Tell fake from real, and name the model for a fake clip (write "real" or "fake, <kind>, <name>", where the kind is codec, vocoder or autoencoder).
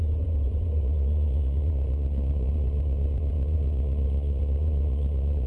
fake, vocoder, Vocos